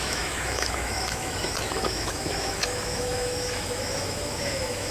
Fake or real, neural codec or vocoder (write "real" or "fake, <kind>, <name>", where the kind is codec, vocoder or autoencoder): fake, autoencoder, DAC-VAE